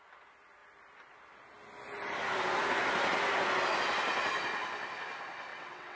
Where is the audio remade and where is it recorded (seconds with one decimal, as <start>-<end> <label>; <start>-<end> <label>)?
0.0-5.5 recorded; 5.5-6.0 remade

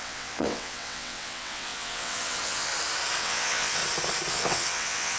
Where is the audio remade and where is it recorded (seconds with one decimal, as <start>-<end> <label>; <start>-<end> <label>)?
0.0-2.7 remade; 2.7-3.2 recorded; 3.2-3.8 remade; 3.8-4.3 recorded; 4.3-5.2 remade

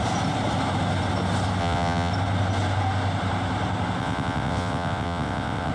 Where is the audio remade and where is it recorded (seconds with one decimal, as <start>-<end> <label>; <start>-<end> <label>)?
0.0-1.6 recorded; 1.6-2.1 remade; 2.1-4.0 recorded; 4.0-5.7 remade

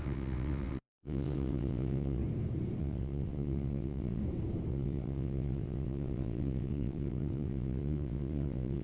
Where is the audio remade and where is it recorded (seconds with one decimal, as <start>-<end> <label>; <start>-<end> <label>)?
0.0-2.2 remade; 2.2-2.8 recorded; 2.8-4.2 remade; 4.2-4.7 recorded; 4.7-8.8 remade

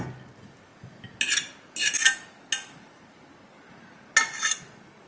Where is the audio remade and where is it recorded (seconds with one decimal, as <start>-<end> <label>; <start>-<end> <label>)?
0.0-5.1 recorded

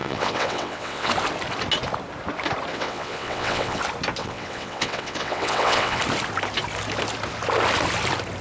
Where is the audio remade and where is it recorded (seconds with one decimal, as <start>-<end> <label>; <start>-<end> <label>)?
0.0-1.1 remade; 1.1-2.7 recorded; 2.7-3.8 remade; 3.8-4.2 recorded; 4.2-6.0 remade; 6.0-8.4 recorded

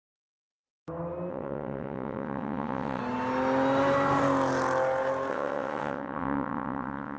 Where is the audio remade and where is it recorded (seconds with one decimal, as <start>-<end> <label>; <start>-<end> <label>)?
0.0-0.7 remade; 0.7-1.3 recorded; 1.3-3.0 remade; 3.0-5.3 recorded; 5.3-7.2 remade

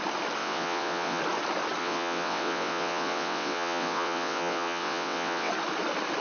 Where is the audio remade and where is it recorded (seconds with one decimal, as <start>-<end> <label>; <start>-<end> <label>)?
0.0-0.4 recorded; 0.4-1.2 remade; 1.2-1.8 recorded; 1.8-5.5 remade; 5.5-6.2 recorded